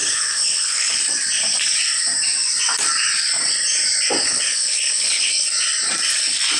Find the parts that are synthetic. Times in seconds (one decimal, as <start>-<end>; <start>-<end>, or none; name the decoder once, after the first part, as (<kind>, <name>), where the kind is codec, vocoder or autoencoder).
0.0-1.0 (codec, HILCodec); 4.2-5.3